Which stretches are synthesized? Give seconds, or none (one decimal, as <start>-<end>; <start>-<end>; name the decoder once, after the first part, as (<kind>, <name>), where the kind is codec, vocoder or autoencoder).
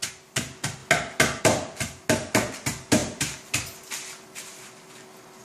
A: none